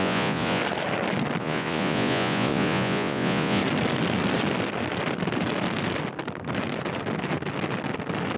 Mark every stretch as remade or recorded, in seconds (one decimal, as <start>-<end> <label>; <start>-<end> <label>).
0.0-0.6 remade; 0.6-1.4 recorded; 1.4-3.6 remade; 3.6-8.4 recorded